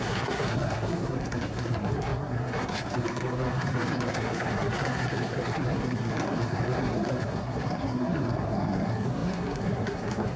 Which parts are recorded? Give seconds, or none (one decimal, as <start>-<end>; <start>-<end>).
none